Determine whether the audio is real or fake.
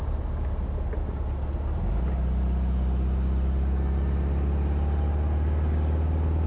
real